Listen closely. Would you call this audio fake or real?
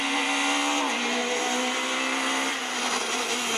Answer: real